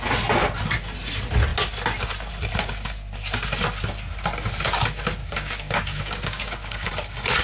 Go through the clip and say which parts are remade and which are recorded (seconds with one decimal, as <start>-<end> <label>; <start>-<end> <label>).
0.0-5.2 recorded; 5.2-6.9 remade; 6.9-7.4 recorded